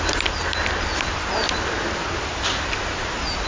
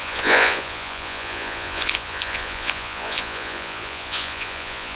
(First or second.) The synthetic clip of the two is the second